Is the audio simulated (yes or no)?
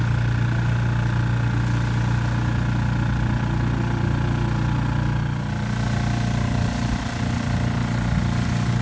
no